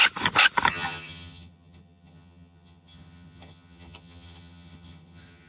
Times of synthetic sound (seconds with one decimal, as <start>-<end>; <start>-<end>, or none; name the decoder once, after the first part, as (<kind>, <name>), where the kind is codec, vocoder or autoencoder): 0.7-5.5 (vocoder, HiFi-GAN)